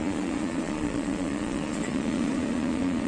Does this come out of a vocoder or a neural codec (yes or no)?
yes